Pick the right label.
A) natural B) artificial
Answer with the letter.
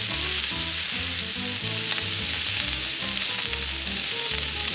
A